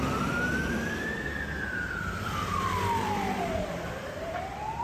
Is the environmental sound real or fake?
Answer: fake